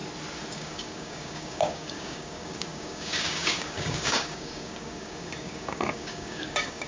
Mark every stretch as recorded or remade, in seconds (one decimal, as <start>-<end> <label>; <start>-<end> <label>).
0.0-0.5 recorded; 0.5-6.9 remade